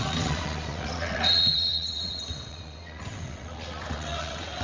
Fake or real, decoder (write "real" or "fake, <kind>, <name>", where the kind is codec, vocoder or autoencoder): fake, vocoder, WaveNeXt